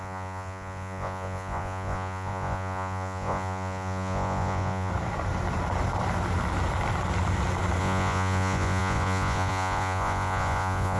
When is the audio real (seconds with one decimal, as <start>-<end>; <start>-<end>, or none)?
4.9-7.8